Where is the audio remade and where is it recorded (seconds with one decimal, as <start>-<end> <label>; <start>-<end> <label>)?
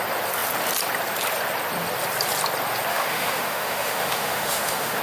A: 0.0-2.9 recorded; 2.9-5.0 remade